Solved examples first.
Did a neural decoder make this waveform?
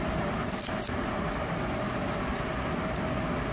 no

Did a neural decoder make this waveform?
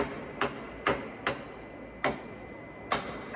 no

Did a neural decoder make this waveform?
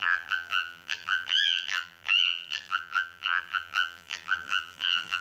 yes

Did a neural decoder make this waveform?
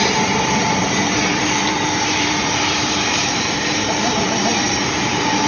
yes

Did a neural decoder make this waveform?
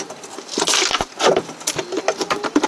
no